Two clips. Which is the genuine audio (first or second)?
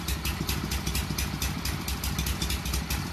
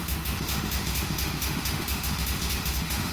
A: first